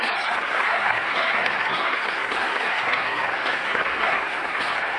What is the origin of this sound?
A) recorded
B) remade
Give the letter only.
B